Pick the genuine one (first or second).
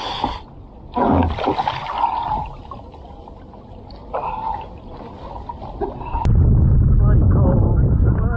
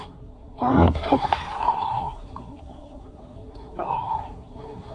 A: first